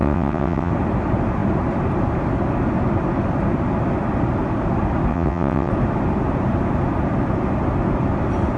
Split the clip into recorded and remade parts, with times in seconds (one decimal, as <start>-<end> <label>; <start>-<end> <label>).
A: 0.0-0.7 remade; 0.7-5.1 recorded; 5.1-5.7 remade; 5.7-8.6 recorded